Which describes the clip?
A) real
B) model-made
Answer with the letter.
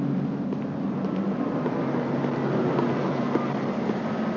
A